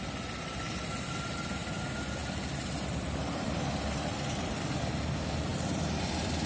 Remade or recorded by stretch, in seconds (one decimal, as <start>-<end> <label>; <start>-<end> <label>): 0.0-2.2 recorded; 2.2-4.8 remade; 4.8-5.5 recorded; 5.5-6.5 remade